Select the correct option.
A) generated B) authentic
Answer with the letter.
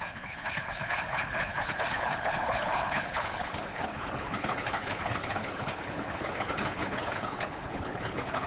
A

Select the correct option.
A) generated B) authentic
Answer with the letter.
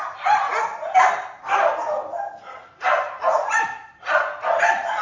B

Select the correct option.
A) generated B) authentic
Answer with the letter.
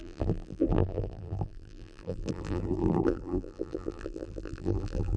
A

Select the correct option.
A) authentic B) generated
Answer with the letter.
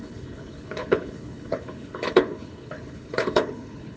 B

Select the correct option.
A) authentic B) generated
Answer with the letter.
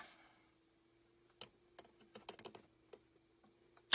A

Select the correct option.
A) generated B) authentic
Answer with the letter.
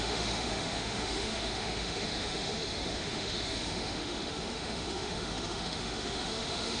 A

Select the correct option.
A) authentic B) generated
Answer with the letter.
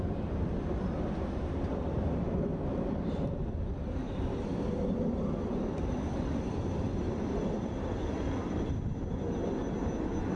A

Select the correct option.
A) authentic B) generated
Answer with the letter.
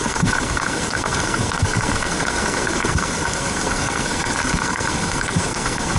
B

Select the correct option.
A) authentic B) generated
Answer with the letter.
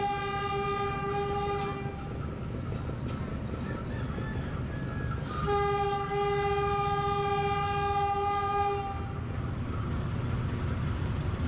A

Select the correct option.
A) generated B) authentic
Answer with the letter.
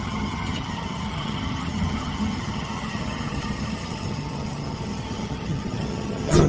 A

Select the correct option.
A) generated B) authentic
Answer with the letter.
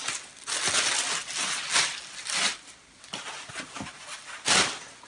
B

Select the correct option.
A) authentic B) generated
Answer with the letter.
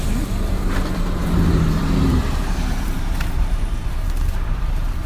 B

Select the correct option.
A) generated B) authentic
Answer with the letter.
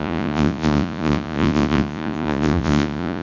A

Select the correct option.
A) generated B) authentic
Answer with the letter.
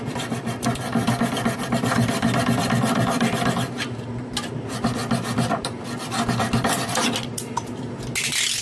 B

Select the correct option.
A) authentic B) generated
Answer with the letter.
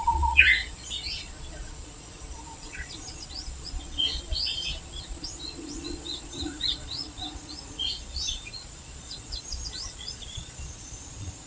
B